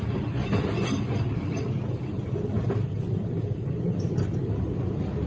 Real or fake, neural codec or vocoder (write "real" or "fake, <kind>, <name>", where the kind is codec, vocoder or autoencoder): fake, vocoder, BigVGAN v2